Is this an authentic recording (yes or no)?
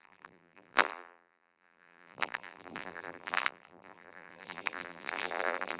no